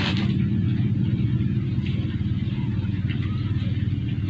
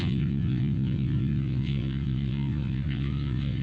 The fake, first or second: second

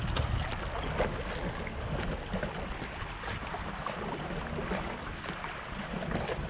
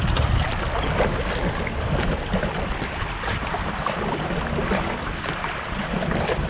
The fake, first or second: second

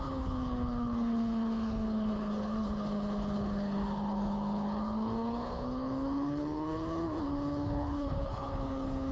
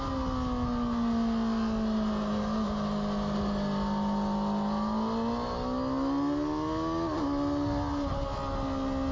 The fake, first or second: first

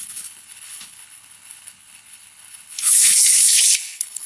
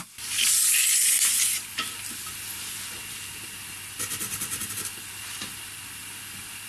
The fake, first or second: first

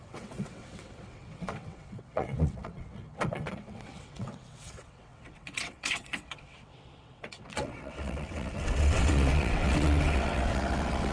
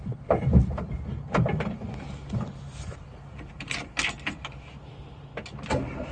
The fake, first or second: first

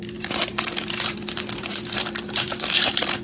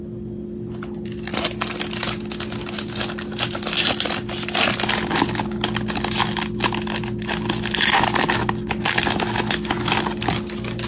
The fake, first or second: first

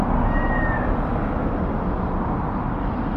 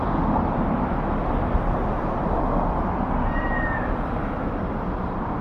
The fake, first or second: second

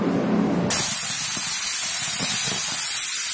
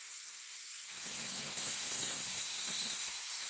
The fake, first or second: second